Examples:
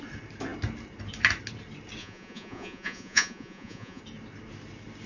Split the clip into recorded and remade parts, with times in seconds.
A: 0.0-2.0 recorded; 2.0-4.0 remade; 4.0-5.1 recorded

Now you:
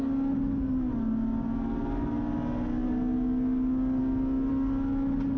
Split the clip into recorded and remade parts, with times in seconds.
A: 0.0-5.4 recorded

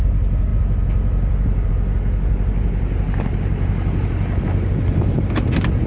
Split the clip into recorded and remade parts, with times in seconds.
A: 0.0-5.9 recorded

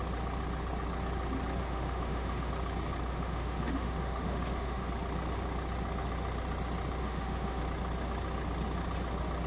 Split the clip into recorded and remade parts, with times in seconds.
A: 0.0-1.6 recorded; 1.6-2.5 remade; 2.5-3.1 recorded; 3.1-4.9 remade; 4.9-7.0 recorded; 7.0-7.6 remade; 7.6-9.5 recorded

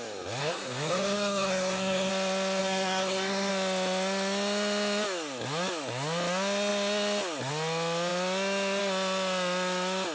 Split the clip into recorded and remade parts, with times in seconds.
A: 0.0-0.4 recorded; 0.4-2.1 remade; 2.1-2.6 recorded; 2.6-3.5 remade; 3.5-10.1 recorded

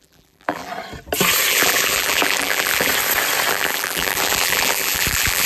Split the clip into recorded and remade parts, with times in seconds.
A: 0.0-0.7 remade; 0.7-1.5 recorded; 1.5-2.9 remade; 2.9-3.5 recorded; 3.5-5.5 remade

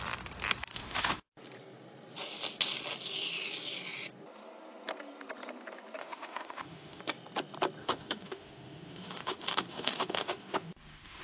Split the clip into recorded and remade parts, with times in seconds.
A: 0.0-0.7 recorded; 0.7-1.2 remade; 1.2-6.0 recorded; 6.0-7.0 remade; 7.0-7.8 recorded; 7.8-11.2 remade